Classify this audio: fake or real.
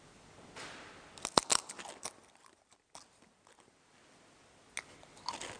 real